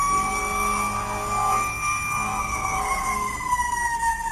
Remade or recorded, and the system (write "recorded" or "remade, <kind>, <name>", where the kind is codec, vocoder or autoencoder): remade, codec, SNAC